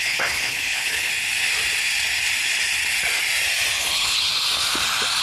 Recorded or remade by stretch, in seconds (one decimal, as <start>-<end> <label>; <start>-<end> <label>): 0.0-1.1 remade; 1.1-3.8 recorded; 3.8-4.3 remade; 4.3-5.2 recorded